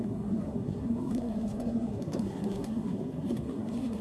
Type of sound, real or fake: fake